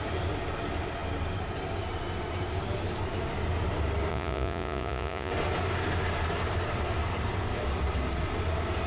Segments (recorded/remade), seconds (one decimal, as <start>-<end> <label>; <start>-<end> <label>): 0.0-4.1 recorded; 4.1-5.3 remade; 5.3-8.9 recorded